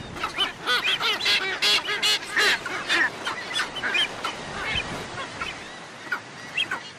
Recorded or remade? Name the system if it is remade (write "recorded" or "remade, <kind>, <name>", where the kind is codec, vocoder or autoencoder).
recorded